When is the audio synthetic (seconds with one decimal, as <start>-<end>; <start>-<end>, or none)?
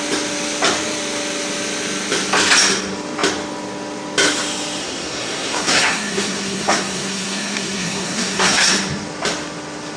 4.8-8.7